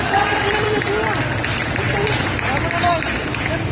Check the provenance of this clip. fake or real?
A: real